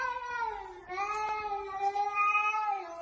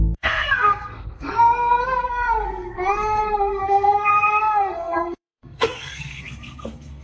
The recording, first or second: first